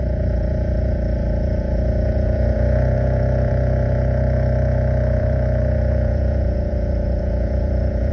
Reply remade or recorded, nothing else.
remade